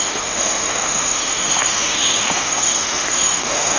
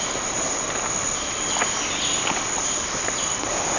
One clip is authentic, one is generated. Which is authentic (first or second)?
second